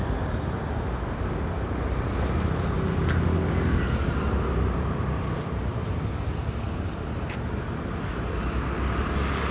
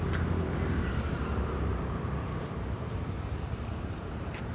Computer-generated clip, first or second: second